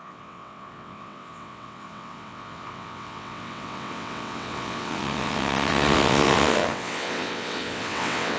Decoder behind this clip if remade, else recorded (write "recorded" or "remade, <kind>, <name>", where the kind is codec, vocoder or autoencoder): remade, vocoder, WaveNeXt